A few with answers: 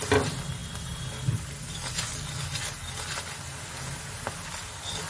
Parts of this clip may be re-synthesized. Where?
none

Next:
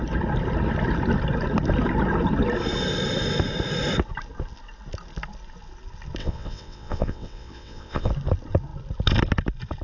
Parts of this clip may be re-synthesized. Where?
6.2-8.1 (vocoder, WaveNeXt)